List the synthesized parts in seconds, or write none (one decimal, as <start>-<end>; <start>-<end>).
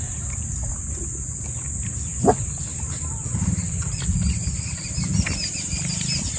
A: none